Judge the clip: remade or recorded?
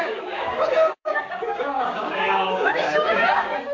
remade